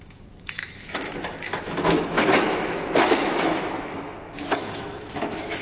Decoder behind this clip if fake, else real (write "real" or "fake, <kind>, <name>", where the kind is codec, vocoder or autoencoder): fake, autoencoder, DAC-VAE